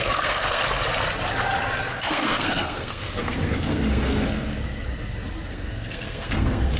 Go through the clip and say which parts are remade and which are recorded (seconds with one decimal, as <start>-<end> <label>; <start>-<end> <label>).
0.0-0.6 remade; 0.6-1.9 recorded; 1.9-4.6 remade; 4.6-5.5 recorded; 5.5-6.8 remade